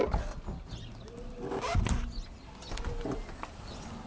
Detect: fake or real real